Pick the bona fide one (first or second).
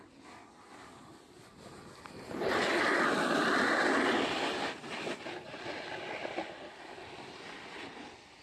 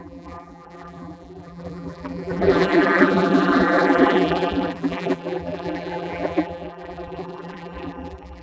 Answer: first